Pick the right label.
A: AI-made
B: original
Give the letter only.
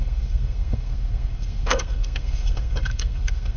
A